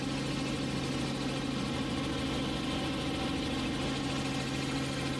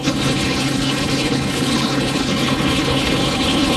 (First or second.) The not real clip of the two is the second